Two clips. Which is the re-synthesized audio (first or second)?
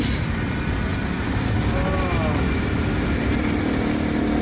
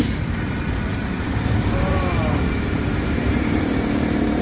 second